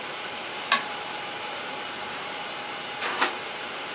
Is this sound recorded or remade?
remade